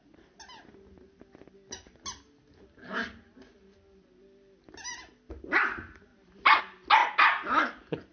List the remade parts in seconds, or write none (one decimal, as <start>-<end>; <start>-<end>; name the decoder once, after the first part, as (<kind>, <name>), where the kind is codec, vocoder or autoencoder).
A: 6.1-6.6 (vocoder, BigVGAN v2)